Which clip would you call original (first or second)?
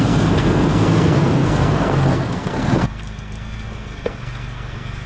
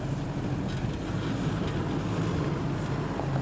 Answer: second